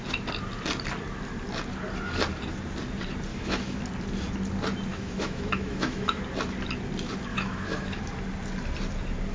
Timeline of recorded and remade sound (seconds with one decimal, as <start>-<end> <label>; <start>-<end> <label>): 0.0-3.3 recorded; 3.3-3.8 remade; 3.8-4.9 recorded; 4.9-6.2 remade; 6.2-7.3 recorded; 7.3-8.0 remade; 8.0-9.3 recorded